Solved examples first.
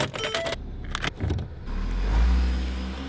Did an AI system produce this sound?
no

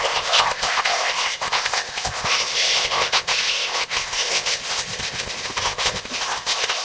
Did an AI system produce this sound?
yes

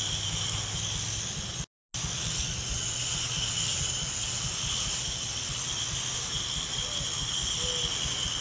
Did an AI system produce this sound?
no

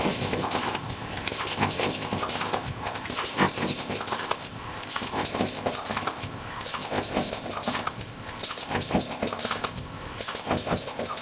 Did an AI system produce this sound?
yes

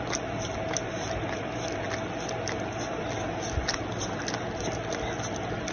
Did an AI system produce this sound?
no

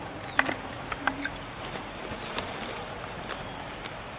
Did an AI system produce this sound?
no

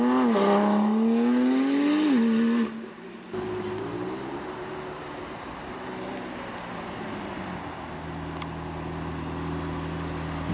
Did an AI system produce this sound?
no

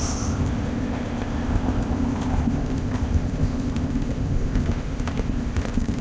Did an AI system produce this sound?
yes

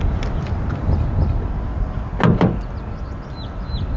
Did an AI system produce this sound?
no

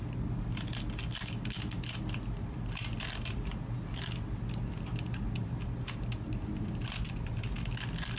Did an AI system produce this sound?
no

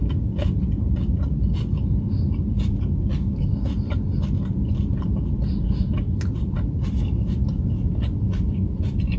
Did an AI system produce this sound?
no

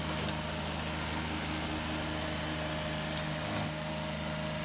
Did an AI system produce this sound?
no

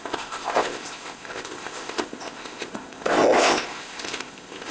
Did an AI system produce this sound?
yes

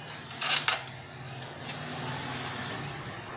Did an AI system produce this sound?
no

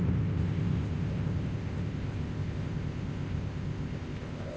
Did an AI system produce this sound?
yes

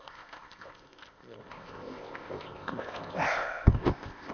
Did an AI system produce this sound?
yes